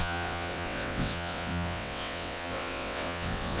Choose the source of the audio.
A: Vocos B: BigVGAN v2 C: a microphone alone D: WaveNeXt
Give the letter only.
D